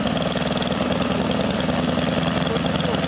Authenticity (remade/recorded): recorded